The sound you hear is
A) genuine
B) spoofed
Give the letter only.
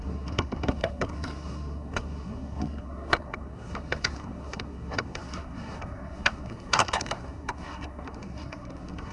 B